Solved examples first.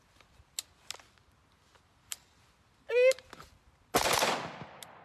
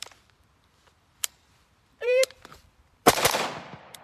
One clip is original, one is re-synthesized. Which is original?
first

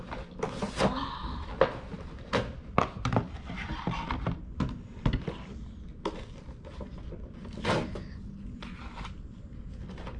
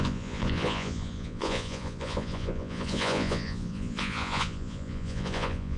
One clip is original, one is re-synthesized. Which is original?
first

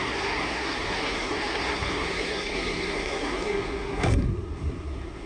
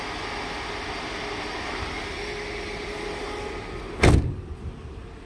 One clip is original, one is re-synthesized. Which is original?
second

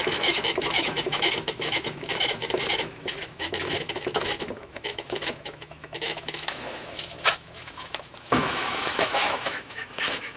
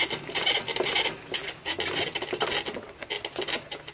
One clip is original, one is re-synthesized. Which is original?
second